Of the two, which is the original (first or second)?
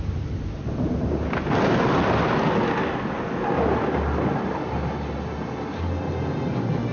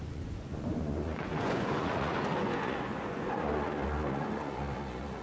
first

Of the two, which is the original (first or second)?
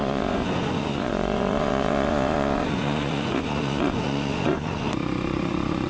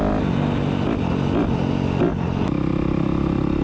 second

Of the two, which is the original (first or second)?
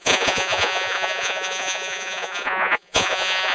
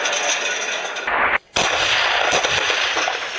second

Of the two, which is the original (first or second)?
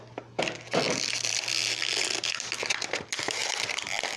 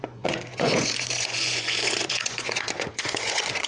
first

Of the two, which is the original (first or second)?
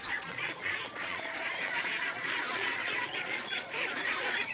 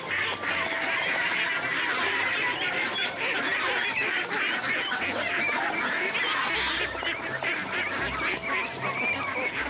second